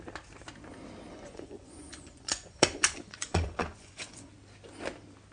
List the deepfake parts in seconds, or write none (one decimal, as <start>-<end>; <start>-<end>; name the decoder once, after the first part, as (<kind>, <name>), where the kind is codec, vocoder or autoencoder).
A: 1.1-4.3 (vocoder, Vocos)